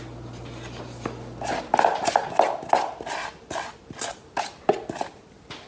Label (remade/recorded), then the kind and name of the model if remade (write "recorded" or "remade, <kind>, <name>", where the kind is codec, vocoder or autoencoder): recorded